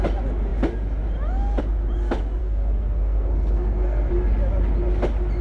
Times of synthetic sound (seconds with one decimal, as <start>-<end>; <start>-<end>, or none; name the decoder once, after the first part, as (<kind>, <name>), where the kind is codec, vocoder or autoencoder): 2.4-4.1 (codec, SNAC)